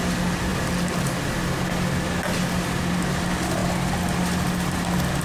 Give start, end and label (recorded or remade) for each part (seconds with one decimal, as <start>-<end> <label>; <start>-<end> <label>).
0.0-5.2 recorded